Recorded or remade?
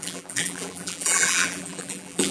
remade